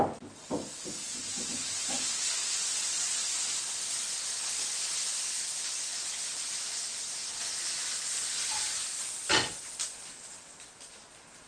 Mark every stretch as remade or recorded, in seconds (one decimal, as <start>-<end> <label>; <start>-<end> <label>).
0.0-11.5 recorded

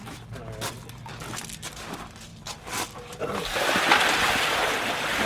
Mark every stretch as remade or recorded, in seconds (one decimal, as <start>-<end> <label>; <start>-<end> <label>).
0.0-5.3 recorded